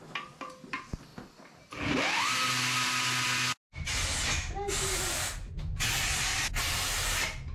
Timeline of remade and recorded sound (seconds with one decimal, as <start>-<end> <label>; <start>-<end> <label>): 0.0-7.5 recorded